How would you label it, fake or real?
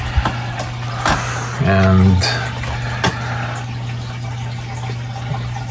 real